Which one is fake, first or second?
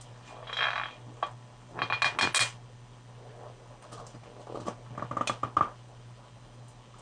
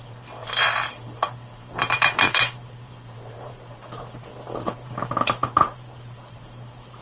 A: second